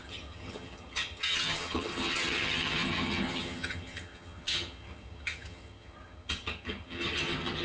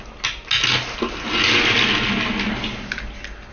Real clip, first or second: second